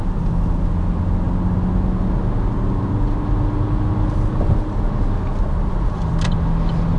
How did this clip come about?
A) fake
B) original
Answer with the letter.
B